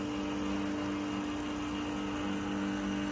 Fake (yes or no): no